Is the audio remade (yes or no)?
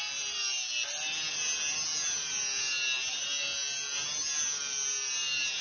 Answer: no